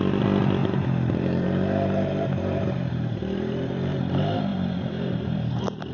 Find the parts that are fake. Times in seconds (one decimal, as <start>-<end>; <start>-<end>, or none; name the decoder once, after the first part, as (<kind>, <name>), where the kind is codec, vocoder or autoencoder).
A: 0.6-4.0 (vocoder, BigVGAN v2); 4.5-5.9